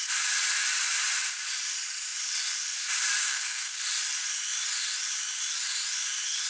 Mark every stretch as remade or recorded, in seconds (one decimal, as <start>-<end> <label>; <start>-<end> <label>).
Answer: 0.0-3.2 recorded; 3.2-3.8 remade; 3.8-6.5 recorded